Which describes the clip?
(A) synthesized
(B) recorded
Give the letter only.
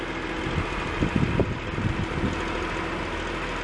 B